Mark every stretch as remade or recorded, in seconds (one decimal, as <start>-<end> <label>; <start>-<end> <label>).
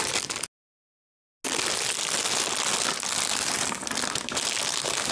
0.0-5.1 recorded